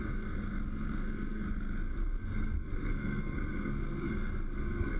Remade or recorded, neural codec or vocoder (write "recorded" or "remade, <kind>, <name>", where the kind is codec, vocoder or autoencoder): remade, codec, SNAC